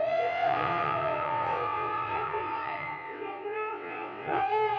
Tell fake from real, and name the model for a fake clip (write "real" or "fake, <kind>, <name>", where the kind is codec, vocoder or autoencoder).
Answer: fake, vocoder, WaveNeXt